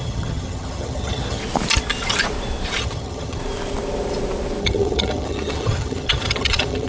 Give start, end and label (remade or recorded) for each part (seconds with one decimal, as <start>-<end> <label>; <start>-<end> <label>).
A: 0.0-1.4 remade; 1.4-2.8 recorded; 2.8-3.4 remade; 3.4-4.6 recorded; 4.6-6.9 remade